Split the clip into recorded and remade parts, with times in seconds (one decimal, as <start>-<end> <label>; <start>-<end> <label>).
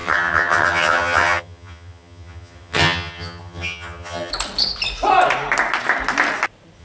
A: 0.0-4.3 remade; 4.3-6.8 recorded